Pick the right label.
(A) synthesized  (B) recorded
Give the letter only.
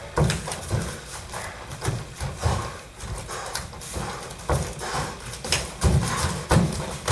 B